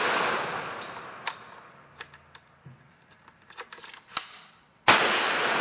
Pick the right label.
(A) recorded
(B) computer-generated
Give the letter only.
A